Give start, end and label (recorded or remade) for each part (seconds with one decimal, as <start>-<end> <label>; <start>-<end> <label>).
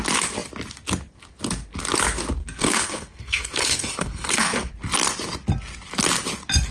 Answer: 0.0-2.4 recorded; 2.4-4.7 remade; 4.7-6.7 recorded